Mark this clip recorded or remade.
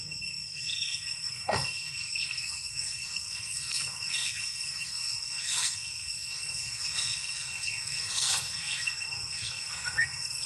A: remade